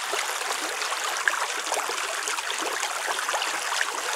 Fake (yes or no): no